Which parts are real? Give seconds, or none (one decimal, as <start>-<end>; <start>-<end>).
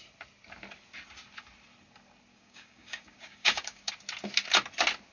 0.0-2.3; 3.9-5.1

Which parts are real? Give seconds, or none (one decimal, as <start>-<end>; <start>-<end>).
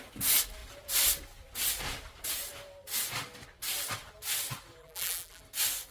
0.0-4.8; 5.4-5.9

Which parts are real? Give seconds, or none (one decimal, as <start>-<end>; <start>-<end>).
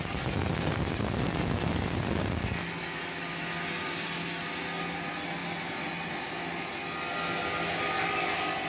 0.0-8.7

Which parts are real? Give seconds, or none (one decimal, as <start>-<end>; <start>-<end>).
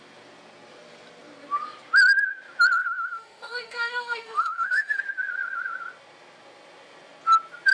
0.0-2.8; 5.0-7.7